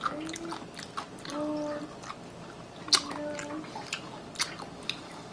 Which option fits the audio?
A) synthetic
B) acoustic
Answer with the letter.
B